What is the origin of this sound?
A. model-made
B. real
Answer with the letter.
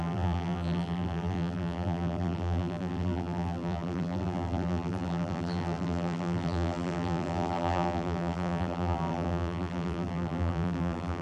A